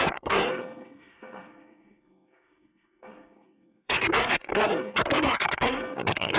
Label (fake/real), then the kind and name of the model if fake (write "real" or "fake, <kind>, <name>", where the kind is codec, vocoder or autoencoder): fake, codec, SNAC